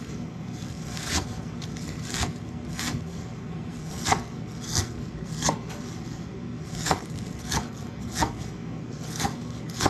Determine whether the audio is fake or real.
fake